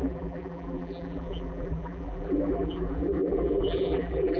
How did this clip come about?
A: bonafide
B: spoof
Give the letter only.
B